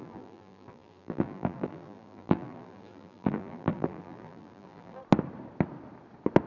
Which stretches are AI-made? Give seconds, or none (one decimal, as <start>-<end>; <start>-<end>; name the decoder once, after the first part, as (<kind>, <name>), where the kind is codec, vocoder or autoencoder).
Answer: 0.0-5.0 (vocoder, BigVGAN v2)